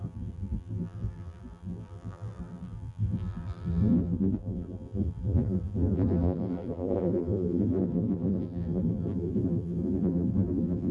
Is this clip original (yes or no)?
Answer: no